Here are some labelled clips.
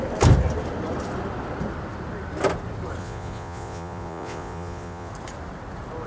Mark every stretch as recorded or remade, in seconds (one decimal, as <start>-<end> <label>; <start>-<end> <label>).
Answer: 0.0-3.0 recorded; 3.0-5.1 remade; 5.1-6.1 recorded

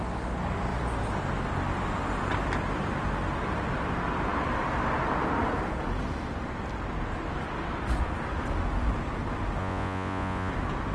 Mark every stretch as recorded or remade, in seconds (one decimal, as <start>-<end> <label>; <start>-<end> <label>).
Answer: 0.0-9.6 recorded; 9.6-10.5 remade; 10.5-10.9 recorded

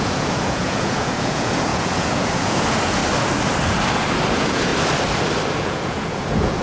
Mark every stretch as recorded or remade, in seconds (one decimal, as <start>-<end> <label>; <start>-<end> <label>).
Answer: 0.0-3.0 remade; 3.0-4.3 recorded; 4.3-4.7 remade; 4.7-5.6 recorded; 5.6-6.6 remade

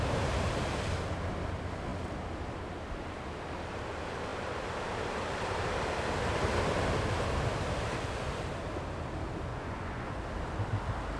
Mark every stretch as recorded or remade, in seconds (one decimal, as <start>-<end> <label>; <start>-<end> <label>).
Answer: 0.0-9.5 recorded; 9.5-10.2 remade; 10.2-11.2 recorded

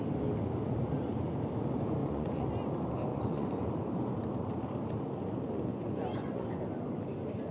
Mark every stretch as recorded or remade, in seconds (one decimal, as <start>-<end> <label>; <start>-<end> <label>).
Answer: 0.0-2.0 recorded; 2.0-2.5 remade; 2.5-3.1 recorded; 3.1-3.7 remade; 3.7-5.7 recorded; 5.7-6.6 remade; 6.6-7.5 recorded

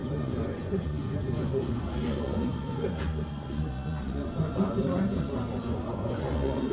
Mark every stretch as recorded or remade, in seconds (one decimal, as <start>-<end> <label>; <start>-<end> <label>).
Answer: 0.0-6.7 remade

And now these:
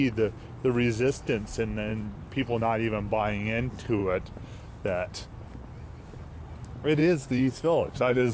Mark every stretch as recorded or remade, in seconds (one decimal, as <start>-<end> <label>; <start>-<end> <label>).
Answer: 0.0-7.0 recorded; 7.0-8.3 remade

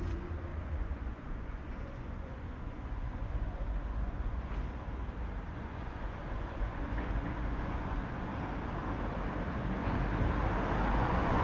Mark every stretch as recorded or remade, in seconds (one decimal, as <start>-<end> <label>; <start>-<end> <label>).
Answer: 0.0-4.5 remade; 4.5-5.5 recorded; 5.5-8.3 remade; 8.3-9.5 recorded; 9.5-10.0 remade; 10.0-10.9 recorded; 10.9-11.4 remade